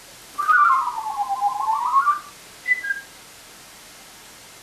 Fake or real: real